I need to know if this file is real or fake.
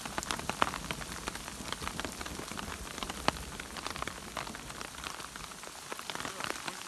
real